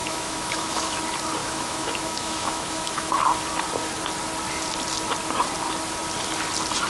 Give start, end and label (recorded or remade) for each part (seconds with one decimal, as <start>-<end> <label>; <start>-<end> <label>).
0.0-1.0 remade; 1.0-1.4 recorded; 1.4-3.1 remade; 3.1-6.9 recorded